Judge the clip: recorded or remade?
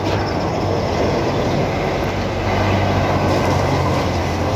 recorded